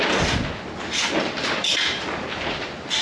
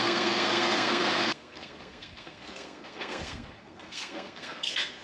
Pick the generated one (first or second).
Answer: second